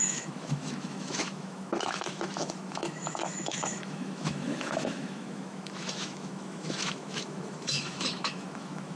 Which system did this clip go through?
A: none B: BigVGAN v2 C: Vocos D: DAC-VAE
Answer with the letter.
D